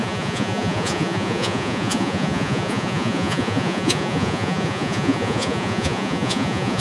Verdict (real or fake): fake